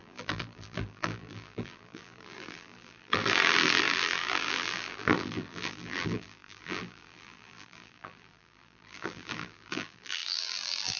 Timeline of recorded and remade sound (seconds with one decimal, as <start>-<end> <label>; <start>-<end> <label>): 0.0-11.0 remade